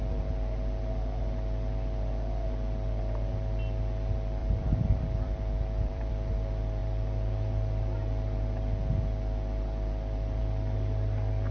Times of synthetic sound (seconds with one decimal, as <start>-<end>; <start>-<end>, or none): 4.4-6.1